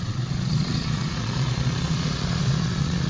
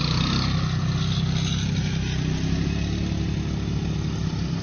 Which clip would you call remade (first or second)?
first